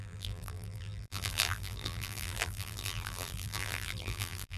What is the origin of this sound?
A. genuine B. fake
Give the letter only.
B